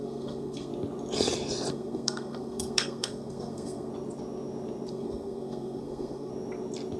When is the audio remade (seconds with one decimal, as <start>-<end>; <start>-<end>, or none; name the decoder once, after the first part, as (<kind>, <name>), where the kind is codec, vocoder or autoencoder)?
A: 0.0-0.7 (codec, SNAC); 1.7-3.9; 4.9-6.3